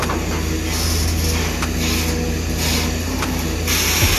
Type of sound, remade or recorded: recorded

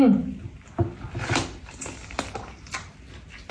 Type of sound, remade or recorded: recorded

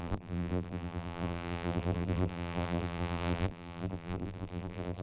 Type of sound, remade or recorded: remade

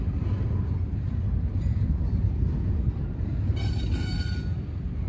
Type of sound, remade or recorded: recorded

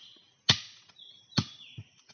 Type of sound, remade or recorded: recorded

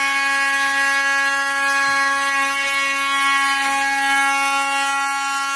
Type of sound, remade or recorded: recorded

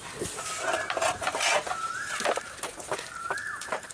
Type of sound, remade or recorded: recorded